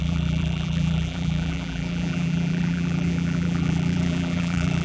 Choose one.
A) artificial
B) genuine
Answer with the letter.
A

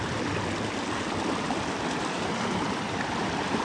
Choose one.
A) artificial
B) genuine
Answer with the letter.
A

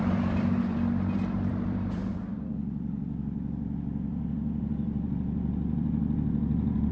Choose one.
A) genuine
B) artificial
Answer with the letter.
B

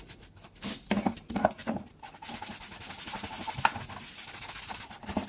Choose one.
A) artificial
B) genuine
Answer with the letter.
A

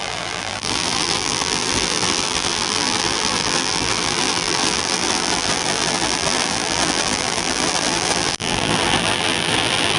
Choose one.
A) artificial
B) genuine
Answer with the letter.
A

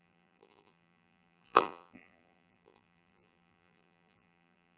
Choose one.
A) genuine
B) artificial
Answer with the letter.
B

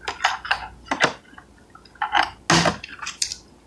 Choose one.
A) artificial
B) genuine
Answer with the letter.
B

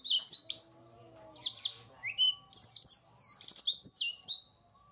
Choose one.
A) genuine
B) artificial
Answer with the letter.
A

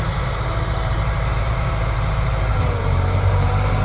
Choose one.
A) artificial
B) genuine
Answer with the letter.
A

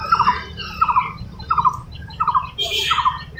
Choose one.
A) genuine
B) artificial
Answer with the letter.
B